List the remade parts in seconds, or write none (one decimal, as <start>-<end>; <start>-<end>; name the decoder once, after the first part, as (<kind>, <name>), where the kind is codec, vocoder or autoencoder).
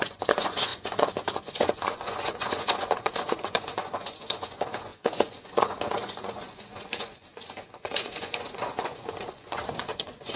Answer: 0.0-10.4 (vocoder, Vocos)